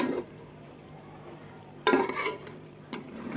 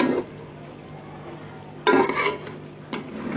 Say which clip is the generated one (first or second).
first